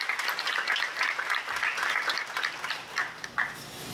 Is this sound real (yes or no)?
yes